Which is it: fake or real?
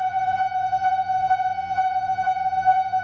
fake